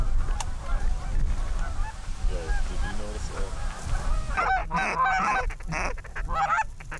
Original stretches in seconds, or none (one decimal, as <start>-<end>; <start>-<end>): 0.0-7.0